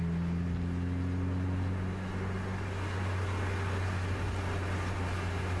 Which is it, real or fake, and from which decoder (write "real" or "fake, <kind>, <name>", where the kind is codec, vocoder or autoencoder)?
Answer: real